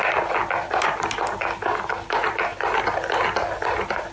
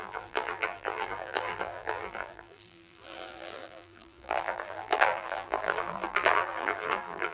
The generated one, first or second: second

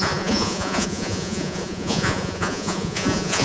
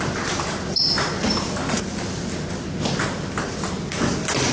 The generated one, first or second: first